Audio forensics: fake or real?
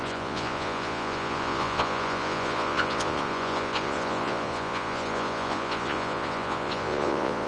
fake